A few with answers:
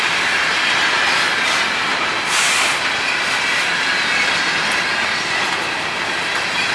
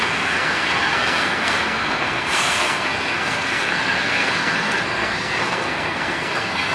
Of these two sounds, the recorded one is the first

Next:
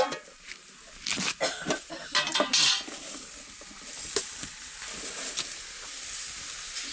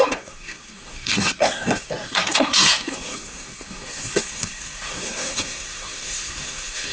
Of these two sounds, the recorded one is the first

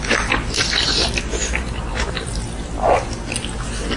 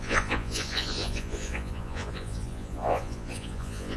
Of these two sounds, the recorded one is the first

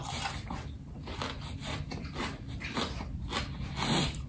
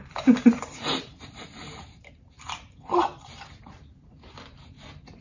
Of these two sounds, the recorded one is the first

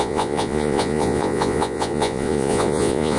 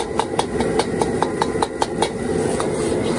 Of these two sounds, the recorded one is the second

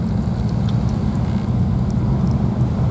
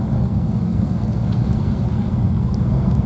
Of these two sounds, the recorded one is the first